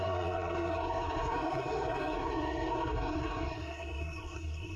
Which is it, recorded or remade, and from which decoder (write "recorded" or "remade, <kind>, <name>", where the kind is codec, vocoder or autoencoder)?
remade, codec, SNAC